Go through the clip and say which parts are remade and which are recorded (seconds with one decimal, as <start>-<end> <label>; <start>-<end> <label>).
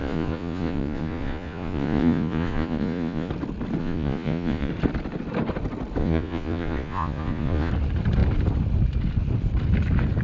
0.0-3.3 remade; 3.3-3.8 recorded; 3.8-4.7 remade; 4.7-6.0 recorded; 6.0-7.7 remade; 7.7-10.2 recorded